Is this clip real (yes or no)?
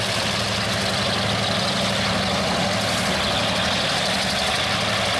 yes